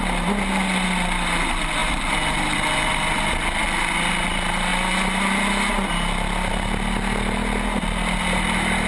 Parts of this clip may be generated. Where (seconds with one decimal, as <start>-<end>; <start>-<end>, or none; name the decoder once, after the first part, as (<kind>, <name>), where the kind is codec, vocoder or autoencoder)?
none